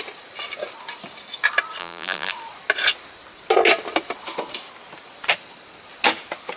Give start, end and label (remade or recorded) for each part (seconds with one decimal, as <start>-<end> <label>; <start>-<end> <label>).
0.0-1.8 recorded; 1.8-2.3 remade; 2.3-6.6 recorded